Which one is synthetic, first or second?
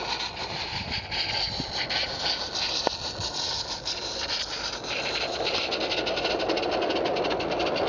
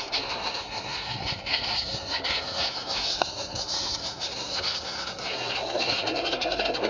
second